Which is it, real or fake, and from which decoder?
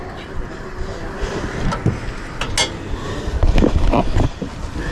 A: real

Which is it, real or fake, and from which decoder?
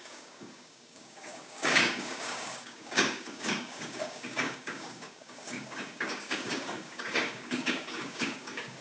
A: fake, codec, DAC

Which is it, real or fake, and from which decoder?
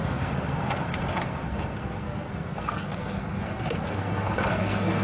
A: fake, codec, SNAC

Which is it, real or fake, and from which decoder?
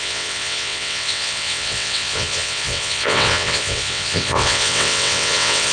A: fake, vocoder, WaveNeXt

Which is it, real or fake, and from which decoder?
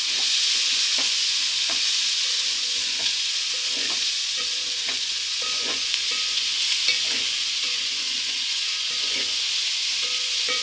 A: fake, vocoder, Vocos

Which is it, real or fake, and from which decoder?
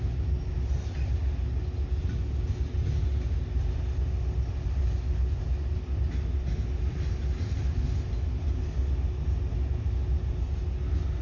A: real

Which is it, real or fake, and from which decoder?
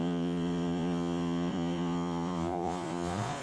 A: fake, vocoder, Vocos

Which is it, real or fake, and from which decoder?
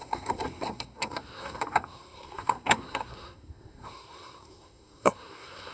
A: fake, codec, SNAC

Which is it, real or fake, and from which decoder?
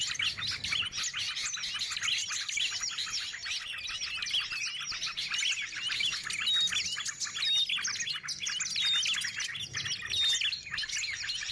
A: real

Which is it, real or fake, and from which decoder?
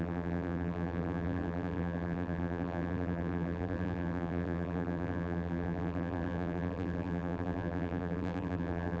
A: fake, vocoder, BigVGAN v2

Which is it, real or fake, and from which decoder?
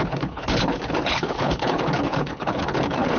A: fake, codec, HILCodec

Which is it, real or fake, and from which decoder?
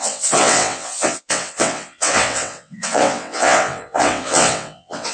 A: fake, vocoder, WaveNeXt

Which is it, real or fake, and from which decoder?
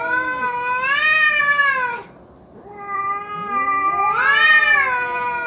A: real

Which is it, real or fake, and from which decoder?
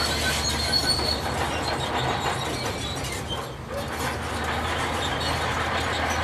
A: real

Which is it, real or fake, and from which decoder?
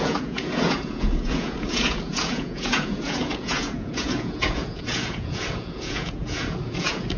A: fake, vocoder, Vocos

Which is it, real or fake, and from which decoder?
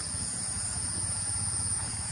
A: fake, vocoder, Vocos